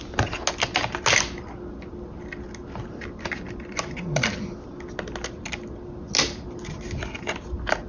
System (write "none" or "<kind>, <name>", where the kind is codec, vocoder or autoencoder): none